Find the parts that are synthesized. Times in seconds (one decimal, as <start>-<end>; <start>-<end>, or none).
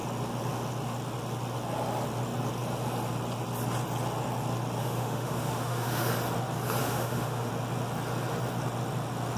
4.8-6.1; 6.8-7.5